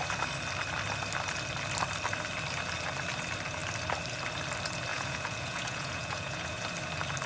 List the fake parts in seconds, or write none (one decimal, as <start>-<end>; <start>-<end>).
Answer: 4.9-6.6